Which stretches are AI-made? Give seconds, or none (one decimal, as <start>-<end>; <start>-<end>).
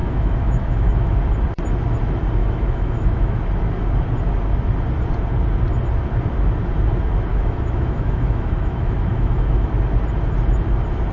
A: 0.0-1.2; 2.4-3.4; 7.3-9.7